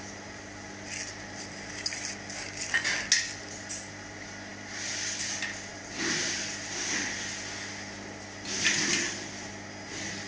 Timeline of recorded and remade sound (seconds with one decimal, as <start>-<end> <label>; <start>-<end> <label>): 0.0-10.3 recorded